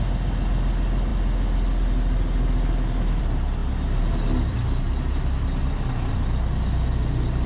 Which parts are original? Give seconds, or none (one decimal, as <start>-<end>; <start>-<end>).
0.0-7.5